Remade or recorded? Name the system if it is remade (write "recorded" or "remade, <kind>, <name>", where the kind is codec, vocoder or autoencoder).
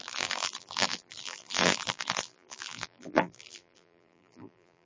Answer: remade, vocoder, BigVGAN v2